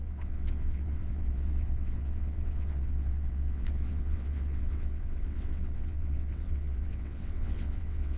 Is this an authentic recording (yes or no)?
no